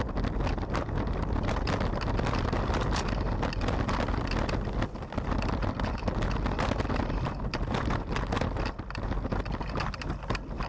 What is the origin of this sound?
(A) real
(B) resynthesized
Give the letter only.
A